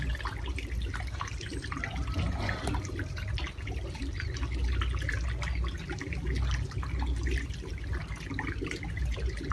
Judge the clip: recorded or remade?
recorded